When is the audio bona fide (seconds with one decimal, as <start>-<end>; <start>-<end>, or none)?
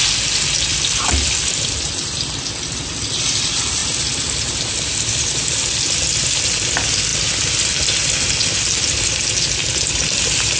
0.0-10.6